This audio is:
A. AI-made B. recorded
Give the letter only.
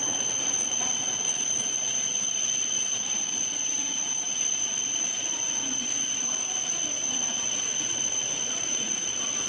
A